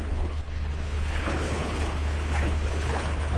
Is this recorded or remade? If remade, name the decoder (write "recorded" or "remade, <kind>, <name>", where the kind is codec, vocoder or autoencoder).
remade, codec, HILCodec